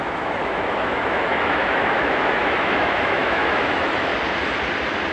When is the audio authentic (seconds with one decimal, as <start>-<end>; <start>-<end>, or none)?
4.1-5.1